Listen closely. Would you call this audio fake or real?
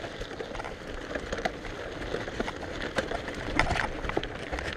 real